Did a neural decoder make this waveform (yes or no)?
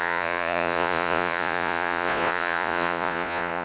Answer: yes